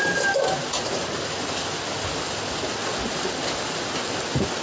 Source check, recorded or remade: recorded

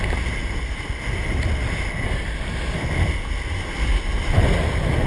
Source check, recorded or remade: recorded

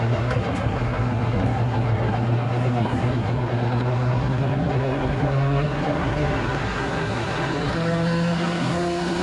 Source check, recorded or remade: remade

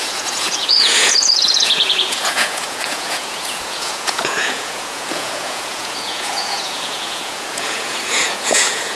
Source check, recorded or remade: remade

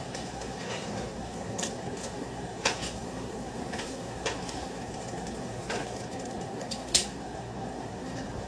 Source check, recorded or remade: remade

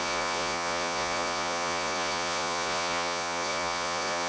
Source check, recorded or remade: remade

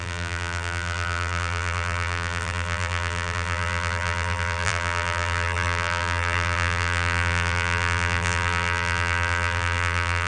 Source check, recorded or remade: remade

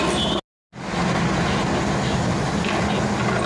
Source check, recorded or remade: recorded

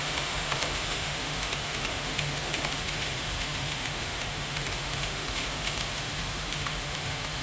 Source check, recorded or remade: remade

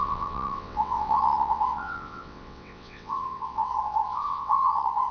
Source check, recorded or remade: remade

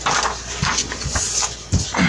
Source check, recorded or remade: recorded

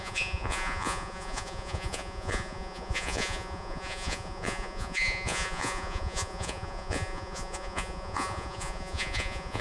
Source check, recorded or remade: remade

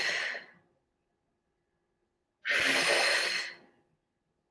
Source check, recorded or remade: recorded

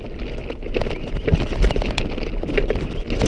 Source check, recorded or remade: recorded